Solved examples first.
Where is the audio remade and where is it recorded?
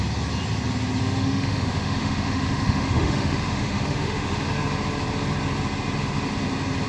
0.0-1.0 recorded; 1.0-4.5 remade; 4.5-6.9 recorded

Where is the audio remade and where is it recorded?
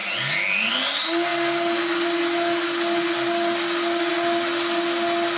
0.0-5.4 recorded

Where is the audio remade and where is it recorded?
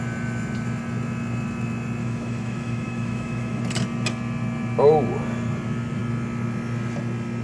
0.0-2.0 recorded; 2.0-3.6 remade; 3.6-7.4 recorded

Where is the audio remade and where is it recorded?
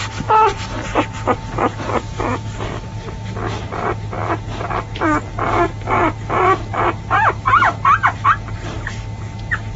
0.0-9.8 recorded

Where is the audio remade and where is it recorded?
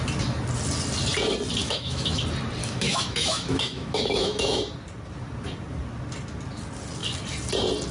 0.0-1.6 recorded; 1.6-2.2 remade; 2.2-2.6 recorded; 2.6-4.6 remade; 4.6-7.9 recorded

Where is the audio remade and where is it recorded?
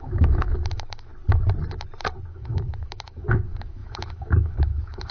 0.0-1.1 remade; 1.1-2.3 recorded; 2.3-5.1 remade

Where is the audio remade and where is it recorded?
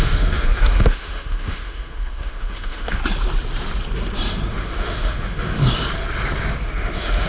0.0-3.0 remade; 3.0-4.5 recorded; 4.5-5.6 remade; 5.6-6.7 recorded; 6.7-7.3 remade